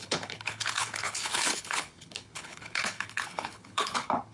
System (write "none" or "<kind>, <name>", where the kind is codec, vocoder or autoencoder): codec, HILCodec